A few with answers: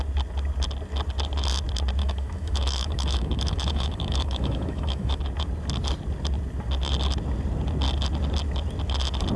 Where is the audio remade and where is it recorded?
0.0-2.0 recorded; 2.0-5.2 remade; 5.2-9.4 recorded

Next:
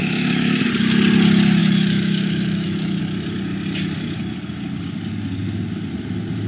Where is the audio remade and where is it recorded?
0.0-0.6 remade; 0.6-1.6 recorded; 1.6-3.0 remade; 3.0-6.5 recorded

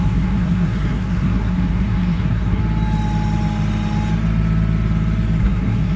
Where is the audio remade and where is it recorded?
0.0-2.6 remade; 2.6-5.4 recorded; 5.4-6.0 remade

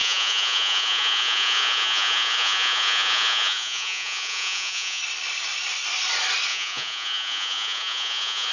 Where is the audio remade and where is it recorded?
0.0-5.0 remade; 5.0-6.5 recorded; 6.5-8.5 remade

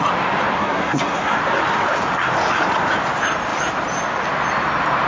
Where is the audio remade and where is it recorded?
0.0-0.6 recorded; 0.6-1.4 remade; 1.4-5.1 recorded

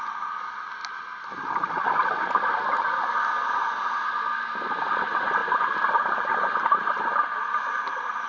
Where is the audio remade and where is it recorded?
0.0-8.3 recorded